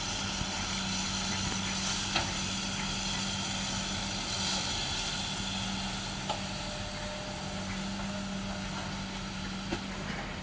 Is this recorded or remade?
recorded